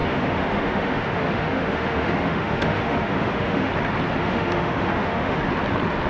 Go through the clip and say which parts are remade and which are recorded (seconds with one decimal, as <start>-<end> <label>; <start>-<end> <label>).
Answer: 0.0-3.7 remade; 3.7-4.2 recorded; 4.2-5.4 remade; 5.4-6.1 recorded